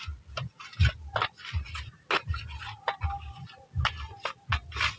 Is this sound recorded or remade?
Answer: recorded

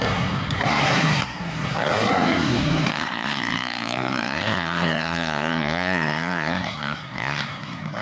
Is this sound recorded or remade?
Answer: remade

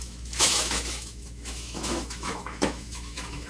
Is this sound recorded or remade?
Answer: remade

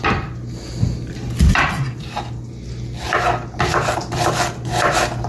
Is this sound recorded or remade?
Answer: recorded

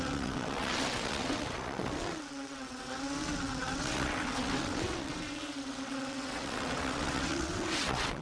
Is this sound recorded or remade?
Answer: remade